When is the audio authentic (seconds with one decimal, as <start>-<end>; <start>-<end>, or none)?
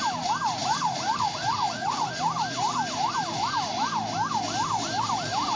0.0-0.6; 2.1-5.6